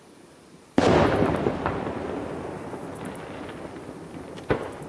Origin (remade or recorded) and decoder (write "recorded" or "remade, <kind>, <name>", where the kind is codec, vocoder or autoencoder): recorded